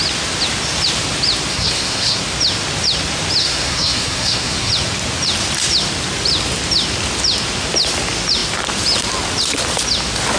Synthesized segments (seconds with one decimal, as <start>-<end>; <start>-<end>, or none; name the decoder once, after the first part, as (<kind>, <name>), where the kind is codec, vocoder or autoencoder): 1.5-2.2 (codec, SNAC); 3.4-4.7